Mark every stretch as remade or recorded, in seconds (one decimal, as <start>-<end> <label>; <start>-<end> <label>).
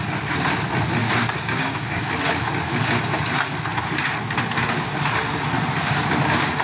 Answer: 0.0-1.0 recorded; 1.0-2.0 remade; 2.0-6.6 recorded